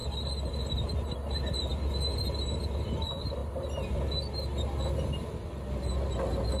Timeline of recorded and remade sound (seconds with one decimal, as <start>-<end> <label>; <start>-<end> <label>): 0.0-6.6 recorded